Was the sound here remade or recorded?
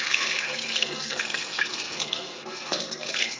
remade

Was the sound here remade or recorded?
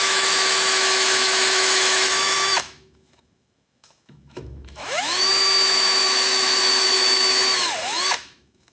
remade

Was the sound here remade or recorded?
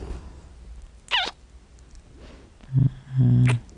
recorded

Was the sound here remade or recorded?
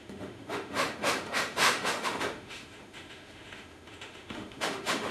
remade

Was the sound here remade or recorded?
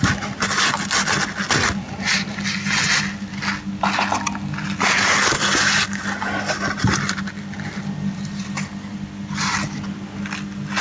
recorded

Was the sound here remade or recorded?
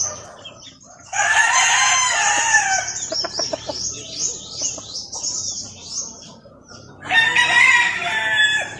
remade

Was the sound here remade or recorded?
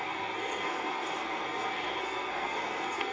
remade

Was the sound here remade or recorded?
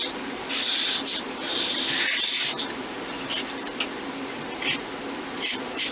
recorded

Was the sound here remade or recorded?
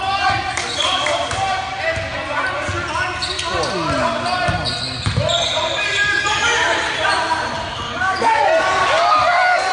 recorded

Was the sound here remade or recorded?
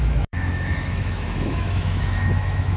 remade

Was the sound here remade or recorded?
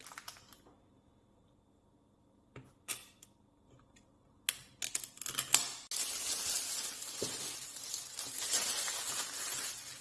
recorded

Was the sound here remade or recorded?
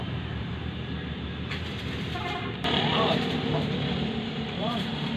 remade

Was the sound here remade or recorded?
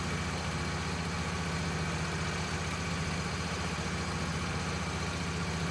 recorded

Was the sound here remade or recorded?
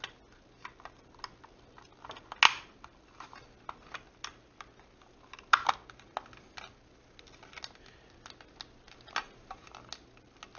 recorded